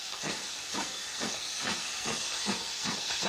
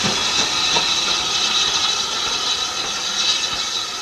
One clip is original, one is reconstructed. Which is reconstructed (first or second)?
first